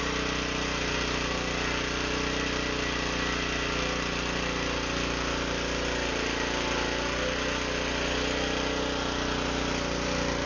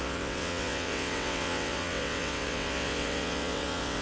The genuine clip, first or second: first